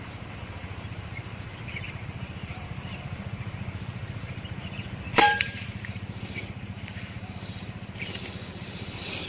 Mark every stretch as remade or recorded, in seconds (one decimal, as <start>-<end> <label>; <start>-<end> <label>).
0.0-9.3 remade